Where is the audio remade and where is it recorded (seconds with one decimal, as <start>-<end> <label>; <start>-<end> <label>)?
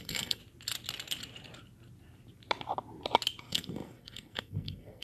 0.0-0.4 remade; 0.4-3.4 recorded; 3.4-5.0 remade